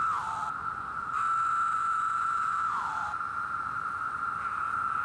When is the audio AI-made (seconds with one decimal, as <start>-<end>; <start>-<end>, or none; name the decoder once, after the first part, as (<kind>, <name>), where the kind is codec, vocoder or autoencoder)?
0.6-1.2 (vocoder, Vocos); 1.7-2.9